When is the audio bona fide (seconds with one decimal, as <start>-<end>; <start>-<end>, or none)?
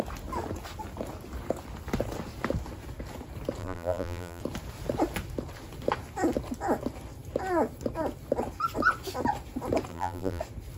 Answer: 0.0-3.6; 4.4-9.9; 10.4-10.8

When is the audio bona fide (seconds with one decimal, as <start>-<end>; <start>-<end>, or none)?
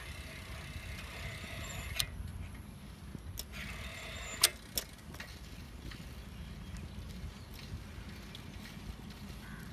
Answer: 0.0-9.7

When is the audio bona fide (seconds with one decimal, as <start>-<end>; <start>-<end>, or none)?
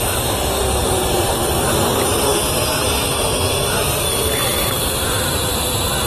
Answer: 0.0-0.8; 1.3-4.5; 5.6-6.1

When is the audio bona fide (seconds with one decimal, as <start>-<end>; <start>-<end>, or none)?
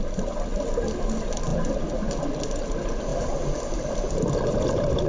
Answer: 0.0-3.1; 4.0-5.1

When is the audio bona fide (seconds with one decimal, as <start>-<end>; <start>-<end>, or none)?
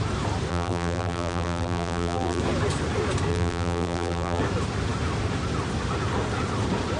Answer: 0.0-0.5; 2.4-3.3; 4.4-7.0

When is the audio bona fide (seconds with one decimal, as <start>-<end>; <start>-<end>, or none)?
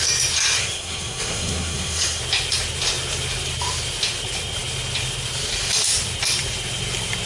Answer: 0.0-0.6; 2.2-7.3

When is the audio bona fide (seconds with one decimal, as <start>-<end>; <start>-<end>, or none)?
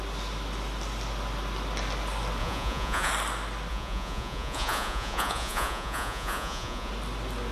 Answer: 0.0-2.4; 3.1-3.7; 6.9-7.5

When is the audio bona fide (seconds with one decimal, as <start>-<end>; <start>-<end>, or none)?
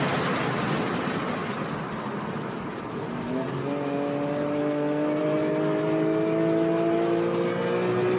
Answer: 0.0-4.6; 5.2-8.2